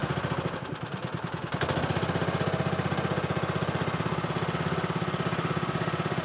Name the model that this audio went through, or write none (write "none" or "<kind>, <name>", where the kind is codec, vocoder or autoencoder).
none